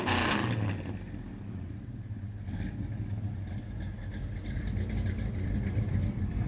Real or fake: real